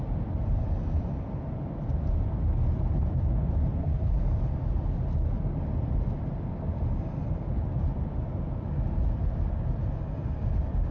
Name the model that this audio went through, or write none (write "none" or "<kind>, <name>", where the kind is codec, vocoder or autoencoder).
none